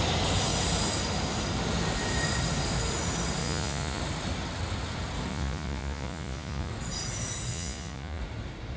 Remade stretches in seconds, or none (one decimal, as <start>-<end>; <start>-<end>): 3.4-4.0; 5.3-6.7; 7.5-8.2